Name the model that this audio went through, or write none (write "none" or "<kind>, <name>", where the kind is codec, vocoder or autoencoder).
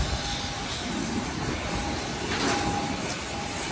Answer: none